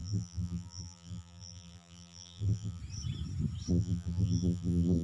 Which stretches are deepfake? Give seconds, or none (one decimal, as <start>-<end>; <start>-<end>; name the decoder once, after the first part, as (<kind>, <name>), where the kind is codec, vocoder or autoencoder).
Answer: 0.0-2.8 (vocoder, BigVGAN v2); 3.7-5.0